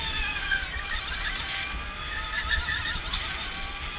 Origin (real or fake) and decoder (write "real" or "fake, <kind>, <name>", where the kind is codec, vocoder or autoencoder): real